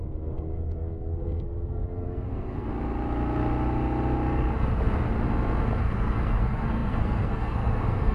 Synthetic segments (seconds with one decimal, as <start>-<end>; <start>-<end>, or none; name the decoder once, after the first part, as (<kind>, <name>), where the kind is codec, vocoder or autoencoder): 0.0-2.7 (codec, SNAC); 5.8-8.1